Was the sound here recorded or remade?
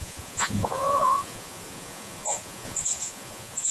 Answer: remade